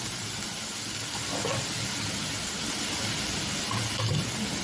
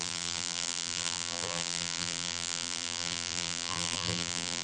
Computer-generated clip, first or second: second